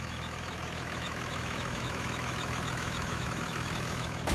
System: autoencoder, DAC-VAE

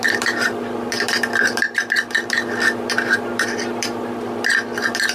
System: vocoder, BigVGAN v2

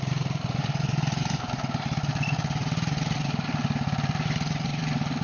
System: vocoder, BigVGAN v2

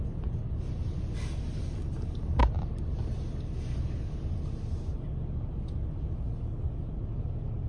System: none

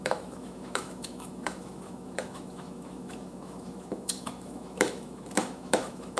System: autoencoder, DAC-VAE